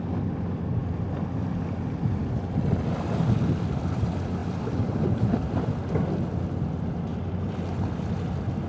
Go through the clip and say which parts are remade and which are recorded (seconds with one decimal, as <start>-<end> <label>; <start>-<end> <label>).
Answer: 0.0-4.4 recorded; 4.4-5.3 remade; 5.3-7.1 recorded; 7.1-8.1 remade; 8.1-8.7 recorded